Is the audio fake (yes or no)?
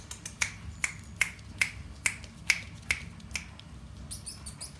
no